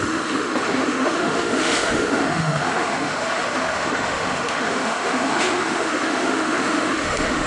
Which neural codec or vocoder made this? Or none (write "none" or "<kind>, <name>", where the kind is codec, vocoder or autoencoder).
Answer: autoencoder, DAC-VAE